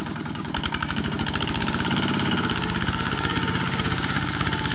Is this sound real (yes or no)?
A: no